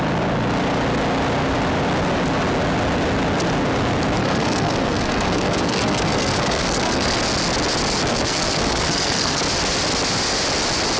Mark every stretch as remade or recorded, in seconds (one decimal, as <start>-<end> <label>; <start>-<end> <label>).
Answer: 0.0-4.2 recorded; 4.2-7.2 remade; 7.2-8.1 recorded; 8.1-9.4 remade; 9.4-11.0 recorded